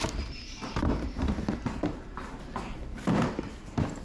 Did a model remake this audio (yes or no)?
yes